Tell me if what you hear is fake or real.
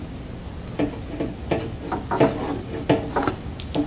real